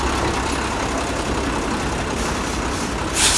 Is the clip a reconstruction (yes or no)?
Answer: no